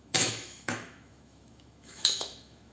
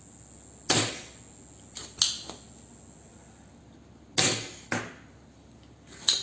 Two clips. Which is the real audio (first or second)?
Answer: second